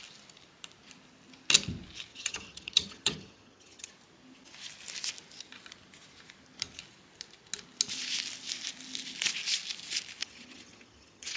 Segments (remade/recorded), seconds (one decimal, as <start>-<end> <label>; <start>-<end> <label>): 0.0-2.1 recorded; 2.1-3.9 remade; 3.9-10.2 recorded; 10.2-11.4 remade